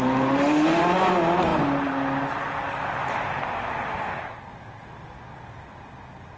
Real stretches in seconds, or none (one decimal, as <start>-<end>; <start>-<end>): 0.0-6.4